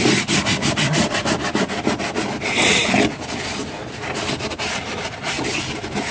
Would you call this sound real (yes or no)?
yes